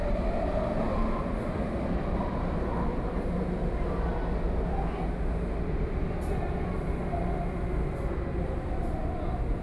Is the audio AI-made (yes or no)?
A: no